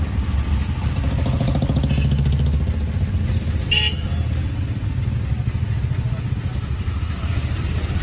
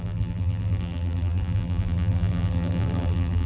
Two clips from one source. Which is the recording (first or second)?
first